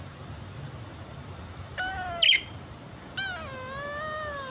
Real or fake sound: real